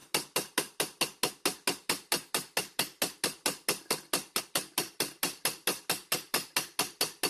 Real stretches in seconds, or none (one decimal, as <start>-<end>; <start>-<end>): 0.0-7.3